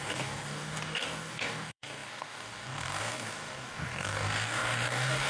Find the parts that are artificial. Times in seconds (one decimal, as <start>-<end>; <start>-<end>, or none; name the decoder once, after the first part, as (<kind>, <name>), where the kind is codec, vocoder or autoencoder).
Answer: 0.0-5.3 (codec, DAC)